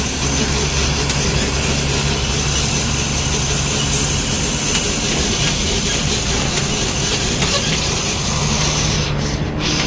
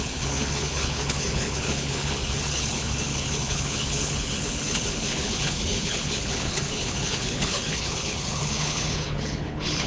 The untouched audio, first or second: first